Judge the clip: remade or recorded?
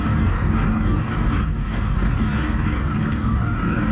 remade